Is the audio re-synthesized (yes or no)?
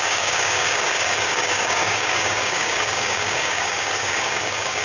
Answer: yes